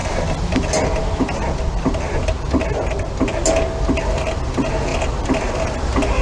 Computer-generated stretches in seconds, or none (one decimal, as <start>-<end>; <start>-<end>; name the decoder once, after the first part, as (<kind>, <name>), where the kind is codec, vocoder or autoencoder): 4.9-5.5 (vocoder, BigVGAN v2)

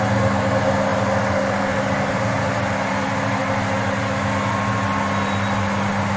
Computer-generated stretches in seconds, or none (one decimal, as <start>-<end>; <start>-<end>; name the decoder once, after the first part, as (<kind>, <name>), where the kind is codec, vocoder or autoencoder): none

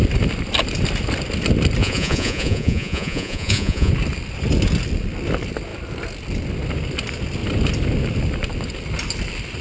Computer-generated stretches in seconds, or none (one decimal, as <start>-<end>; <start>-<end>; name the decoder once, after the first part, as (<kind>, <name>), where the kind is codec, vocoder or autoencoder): 1.8-3.9 (vocoder, Vocos)

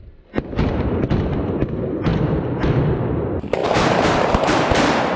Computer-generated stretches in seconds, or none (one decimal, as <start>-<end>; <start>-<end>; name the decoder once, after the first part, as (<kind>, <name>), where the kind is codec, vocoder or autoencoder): 0.9-3.6 (vocoder, BigVGAN v2); 4.3-5.2

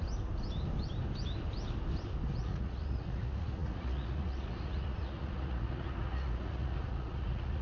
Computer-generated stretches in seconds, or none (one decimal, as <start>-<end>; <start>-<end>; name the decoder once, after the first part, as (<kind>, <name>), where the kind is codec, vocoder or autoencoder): 2.4-7.6 (vocoder, Vocos)

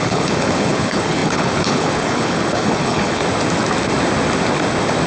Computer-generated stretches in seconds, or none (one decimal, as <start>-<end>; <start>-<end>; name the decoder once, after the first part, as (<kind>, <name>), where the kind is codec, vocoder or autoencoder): 0.0-3.2 (codec, HILCodec)

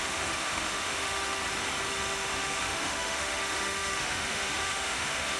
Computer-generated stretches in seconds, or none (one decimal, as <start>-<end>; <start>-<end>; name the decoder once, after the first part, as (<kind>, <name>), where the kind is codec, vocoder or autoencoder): 0.0-1.4 (autoencoder, DAC-VAE); 1.9-5.4

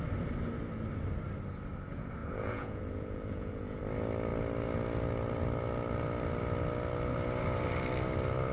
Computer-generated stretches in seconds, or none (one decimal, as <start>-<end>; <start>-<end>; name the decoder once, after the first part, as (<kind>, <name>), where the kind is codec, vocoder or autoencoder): 2.2-3.8 (vocoder, Vocos)